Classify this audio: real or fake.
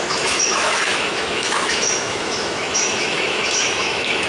fake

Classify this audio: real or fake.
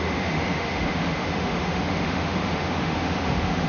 fake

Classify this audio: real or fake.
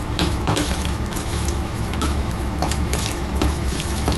fake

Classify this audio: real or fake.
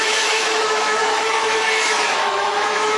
fake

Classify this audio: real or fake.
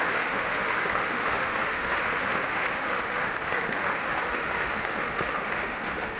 fake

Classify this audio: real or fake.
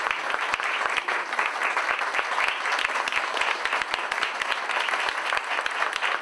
real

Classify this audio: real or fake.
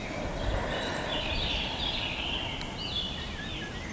real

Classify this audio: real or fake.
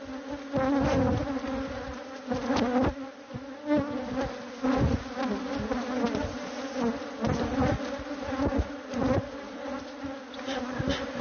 real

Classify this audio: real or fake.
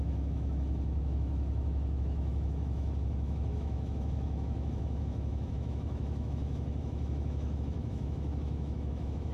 fake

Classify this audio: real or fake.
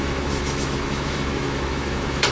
fake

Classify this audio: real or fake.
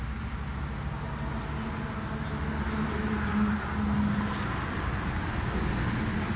real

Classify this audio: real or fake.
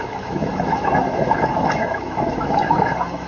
fake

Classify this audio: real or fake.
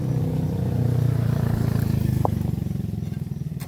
real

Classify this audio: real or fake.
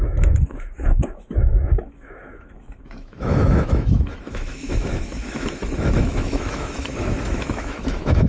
fake